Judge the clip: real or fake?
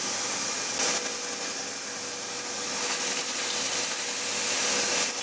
real